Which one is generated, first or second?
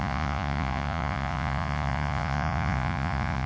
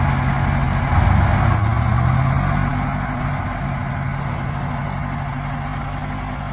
first